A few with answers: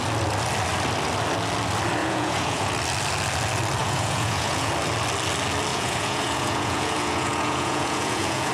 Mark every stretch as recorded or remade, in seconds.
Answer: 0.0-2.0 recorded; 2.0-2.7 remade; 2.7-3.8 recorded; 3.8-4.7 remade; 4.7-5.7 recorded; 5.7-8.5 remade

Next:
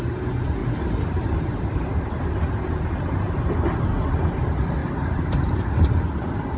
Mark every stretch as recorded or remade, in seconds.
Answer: 0.0-0.6 recorded; 0.6-3.8 remade; 3.8-4.8 recorded; 4.8-5.9 remade; 5.9-6.6 recorded

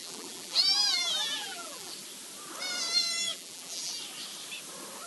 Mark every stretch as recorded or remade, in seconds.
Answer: 0.0-1.9 remade; 1.9-3.3 recorded; 3.3-4.0 remade; 4.0-5.1 recorded